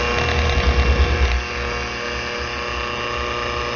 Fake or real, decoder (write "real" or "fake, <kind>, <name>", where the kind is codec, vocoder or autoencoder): real